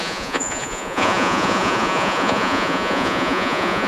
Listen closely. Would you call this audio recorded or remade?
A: remade